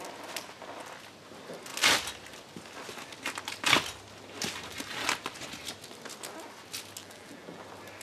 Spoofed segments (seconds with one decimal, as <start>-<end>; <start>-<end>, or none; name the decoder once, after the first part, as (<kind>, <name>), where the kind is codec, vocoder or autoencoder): 7.0-7.6 (vocoder, BigVGAN v2)